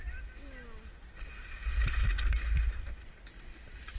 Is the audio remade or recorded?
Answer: recorded